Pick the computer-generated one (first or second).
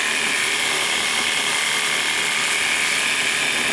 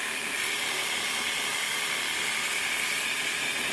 second